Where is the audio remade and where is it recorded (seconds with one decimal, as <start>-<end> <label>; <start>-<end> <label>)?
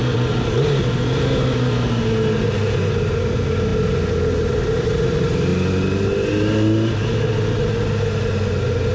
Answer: 0.0-8.9 recorded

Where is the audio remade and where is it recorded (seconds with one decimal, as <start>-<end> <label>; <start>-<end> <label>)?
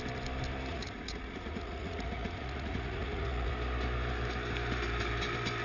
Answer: 0.0-0.7 recorded; 0.7-3.5 remade; 3.5-5.6 recorded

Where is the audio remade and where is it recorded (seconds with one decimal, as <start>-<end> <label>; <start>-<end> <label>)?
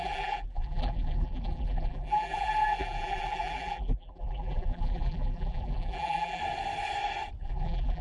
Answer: 0.0-6.4 remade; 6.4-7.4 recorded; 7.4-8.0 remade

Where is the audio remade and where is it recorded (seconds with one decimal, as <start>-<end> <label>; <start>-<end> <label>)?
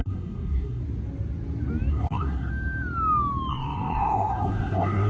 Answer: 0.0-0.8 remade; 0.8-1.9 recorded; 1.9-2.5 remade; 2.5-3.5 recorded; 3.5-5.1 remade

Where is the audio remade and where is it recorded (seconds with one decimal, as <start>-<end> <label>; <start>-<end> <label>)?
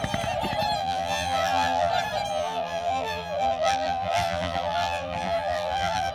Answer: 0.0-0.8 recorded; 0.8-1.9 remade; 1.9-2.3 recorded; 2.3-6.1 remade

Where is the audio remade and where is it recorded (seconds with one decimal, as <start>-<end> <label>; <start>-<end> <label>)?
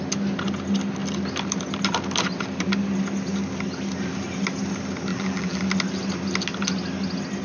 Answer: 0.0-5.1 recorded; 5.1-5.6 remade; 5.6-7.4 recorded